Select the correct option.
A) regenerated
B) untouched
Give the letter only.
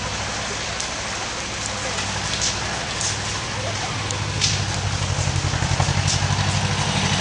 B